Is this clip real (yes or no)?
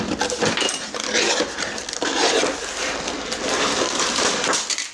no